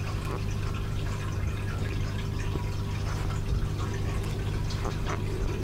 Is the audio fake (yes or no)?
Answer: no